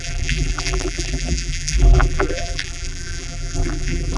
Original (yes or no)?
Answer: no